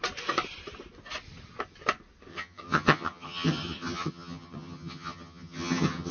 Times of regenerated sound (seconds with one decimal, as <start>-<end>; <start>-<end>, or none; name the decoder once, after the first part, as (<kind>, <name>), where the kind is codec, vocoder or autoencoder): 2.3-6.1 (vocoder, HiFi-GAN)

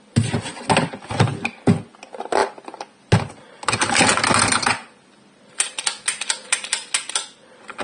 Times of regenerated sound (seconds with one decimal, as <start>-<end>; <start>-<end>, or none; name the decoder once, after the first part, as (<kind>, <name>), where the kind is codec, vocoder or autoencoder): none

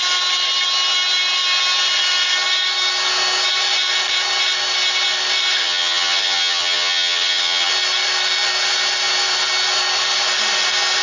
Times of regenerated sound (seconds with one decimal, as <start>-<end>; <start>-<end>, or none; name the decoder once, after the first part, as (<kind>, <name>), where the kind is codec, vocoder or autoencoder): 5.6-7.7 (vocoder, HiFi-GAN)

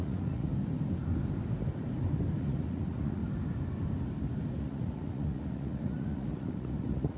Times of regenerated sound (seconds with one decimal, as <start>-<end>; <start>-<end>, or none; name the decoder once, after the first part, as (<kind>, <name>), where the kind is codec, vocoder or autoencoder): 0.0-0.5 (vocoder, Vocos); 2.4-3.2; 4.5-7.2

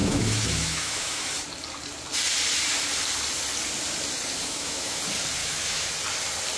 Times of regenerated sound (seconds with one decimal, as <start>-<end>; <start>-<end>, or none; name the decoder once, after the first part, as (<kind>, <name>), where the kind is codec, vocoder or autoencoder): 0.0-1.2 (autoencoder, DAC-VAE); 4.4-5.0; 5.4-5.9

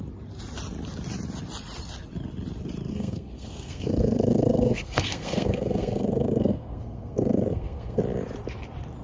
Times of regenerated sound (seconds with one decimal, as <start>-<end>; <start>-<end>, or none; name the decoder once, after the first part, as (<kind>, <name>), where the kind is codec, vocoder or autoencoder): 2.9-8.0 (codec, SNAC)

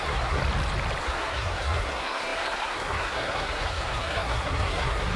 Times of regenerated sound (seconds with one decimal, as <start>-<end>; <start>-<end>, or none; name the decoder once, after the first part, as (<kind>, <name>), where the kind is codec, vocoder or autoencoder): 0.0-0.4 (codec, SNAC); 1.0-5.2

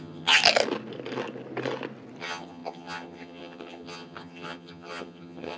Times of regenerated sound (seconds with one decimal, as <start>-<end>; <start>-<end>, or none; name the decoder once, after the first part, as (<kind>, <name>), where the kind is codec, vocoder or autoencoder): 0.0-0.4 (vocoder, HiFi-GAN); 2.2-5.6